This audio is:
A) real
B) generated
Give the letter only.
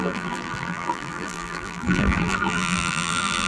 B